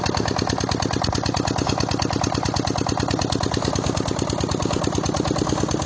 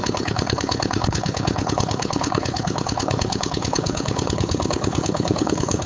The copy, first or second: second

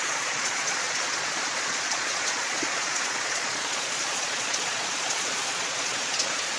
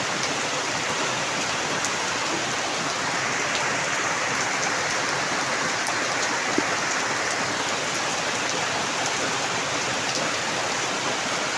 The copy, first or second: first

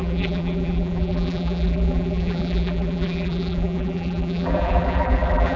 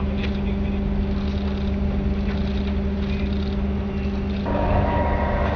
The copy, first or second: first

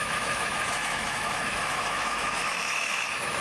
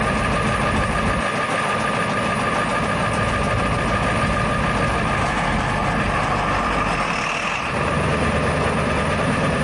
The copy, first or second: first